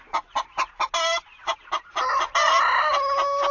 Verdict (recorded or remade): recorded